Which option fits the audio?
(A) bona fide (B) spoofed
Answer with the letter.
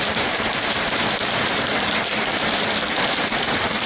B